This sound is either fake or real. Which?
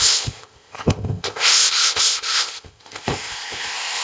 fake